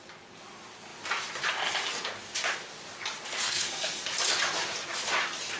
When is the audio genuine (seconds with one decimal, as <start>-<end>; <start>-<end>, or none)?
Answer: 0.0-3.4; 4.0-5.6